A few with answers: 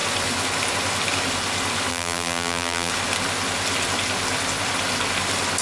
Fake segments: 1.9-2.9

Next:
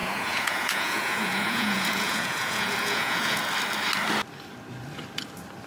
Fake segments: 0.0-3.4